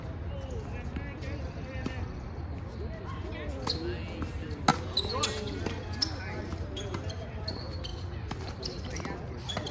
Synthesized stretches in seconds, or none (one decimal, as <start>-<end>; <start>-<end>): none